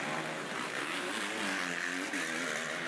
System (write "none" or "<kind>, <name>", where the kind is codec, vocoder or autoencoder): none